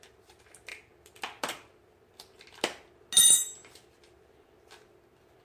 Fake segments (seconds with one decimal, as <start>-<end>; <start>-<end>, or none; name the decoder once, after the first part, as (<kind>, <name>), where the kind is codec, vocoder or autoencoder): none